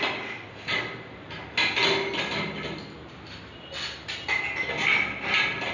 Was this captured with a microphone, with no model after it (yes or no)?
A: yes